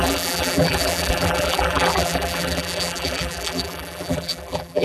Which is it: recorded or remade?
remade